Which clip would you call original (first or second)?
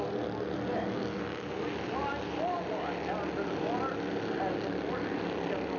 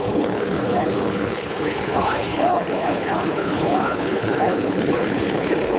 first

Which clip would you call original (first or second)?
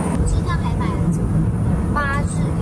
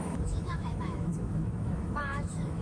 first